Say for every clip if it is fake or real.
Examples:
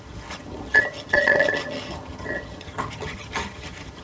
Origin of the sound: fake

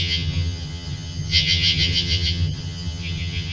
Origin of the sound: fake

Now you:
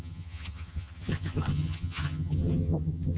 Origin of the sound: fake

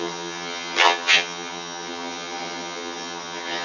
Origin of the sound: fake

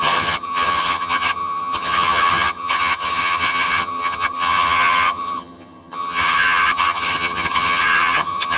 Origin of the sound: fake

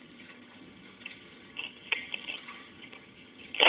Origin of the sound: fake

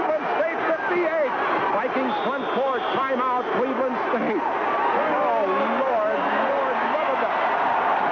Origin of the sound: real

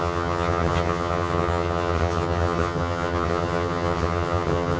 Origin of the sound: fake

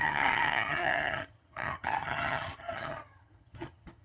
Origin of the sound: fake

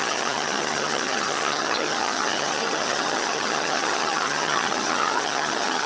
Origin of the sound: fake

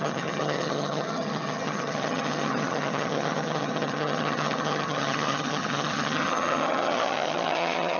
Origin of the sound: fake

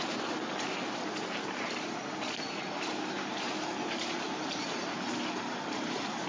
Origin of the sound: real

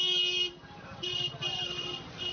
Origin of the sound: real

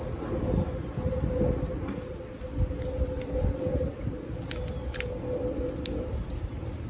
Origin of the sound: real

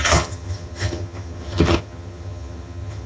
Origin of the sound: fake